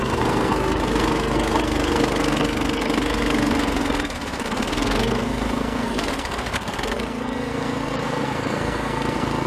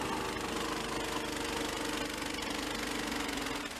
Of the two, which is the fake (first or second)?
first